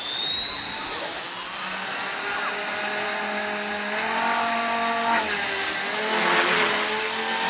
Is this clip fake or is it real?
real